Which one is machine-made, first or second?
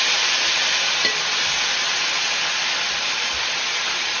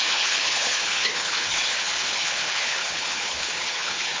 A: second